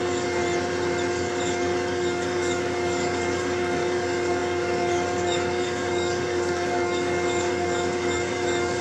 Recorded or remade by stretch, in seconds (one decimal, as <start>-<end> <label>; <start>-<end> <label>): 0.0-0.4 remade; 0.4-1.1 recorded; 1.1-8.8 remade